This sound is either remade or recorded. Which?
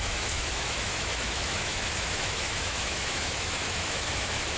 remade